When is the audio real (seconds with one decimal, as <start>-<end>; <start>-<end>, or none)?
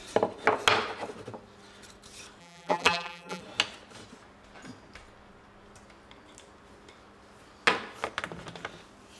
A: 0.0-2.4; 3.4-9.2